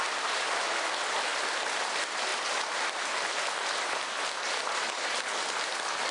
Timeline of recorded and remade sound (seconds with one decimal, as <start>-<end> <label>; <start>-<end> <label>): 0.0-6.1 recorded